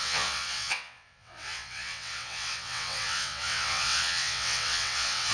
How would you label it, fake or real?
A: fake